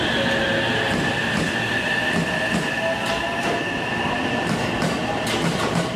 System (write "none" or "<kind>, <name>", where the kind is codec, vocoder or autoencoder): none